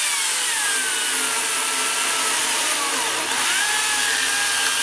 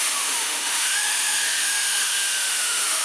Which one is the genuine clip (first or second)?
first